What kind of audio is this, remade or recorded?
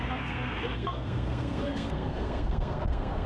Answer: remade